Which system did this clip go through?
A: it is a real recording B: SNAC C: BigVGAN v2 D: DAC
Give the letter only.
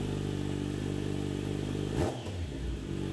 A